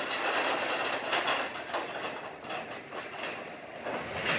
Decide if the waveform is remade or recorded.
recorded